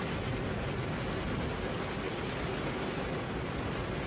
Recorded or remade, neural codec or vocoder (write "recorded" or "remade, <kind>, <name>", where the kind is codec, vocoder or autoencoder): recorded